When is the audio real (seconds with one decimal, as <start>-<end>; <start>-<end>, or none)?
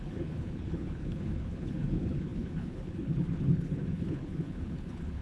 none